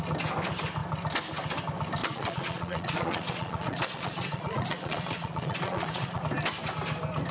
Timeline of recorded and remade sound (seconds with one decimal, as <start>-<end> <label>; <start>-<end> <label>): 0.0-2.0 recorded; 2.0-6.2 remade; 6.2-7.3 recorded

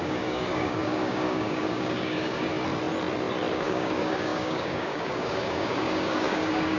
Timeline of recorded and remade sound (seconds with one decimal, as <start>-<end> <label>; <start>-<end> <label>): 0.0-2.5 remade; 2.5-3.5 recorded; 3.5-6.8 remade

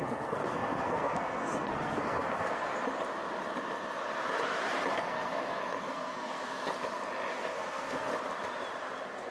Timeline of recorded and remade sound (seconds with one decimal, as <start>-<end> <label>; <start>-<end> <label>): 0.0-2.7 remade; 2.7-4.9 recorded; 4.9-6.7 remade; 6.7-7.3 recorded; 7.3-8.1 remade; 8.1-9.3 recorded

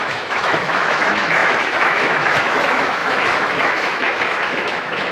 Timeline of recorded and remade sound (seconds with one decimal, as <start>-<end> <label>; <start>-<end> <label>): 0.0-5.1 remade

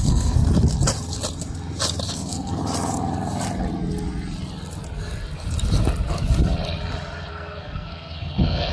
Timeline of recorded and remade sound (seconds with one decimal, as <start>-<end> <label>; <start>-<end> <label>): 0.0-0.4 remade; 0.4-2.1 recorded; 2.1-2.6 remade; 2.6-7.3 recorded; 7.3-8.7 remade

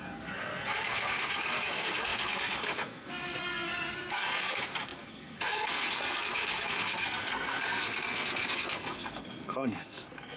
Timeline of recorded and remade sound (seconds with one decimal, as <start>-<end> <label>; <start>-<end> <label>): 0.0-10.4 remade

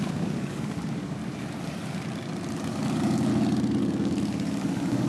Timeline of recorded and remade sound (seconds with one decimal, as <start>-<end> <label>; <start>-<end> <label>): 0.0-1.2 remade; 1.2-2.7 recorded; 2.7-3.3 remade; 3.3-3.8 recorded; 3.8-5.1 remade

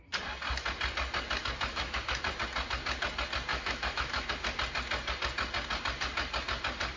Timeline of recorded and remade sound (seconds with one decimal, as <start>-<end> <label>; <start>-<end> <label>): 0.0-1.7 recorded; 1.7-2.3 remade; 2.3-3.5 recorded; 3.5-4.3 remade; 4.3-7.0 recorded